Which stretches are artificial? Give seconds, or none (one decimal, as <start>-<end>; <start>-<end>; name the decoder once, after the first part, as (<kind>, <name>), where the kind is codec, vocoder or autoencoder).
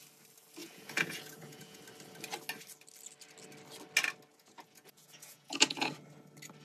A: 0.6-1.8 (vocoder, Vocos); 4.3-5.9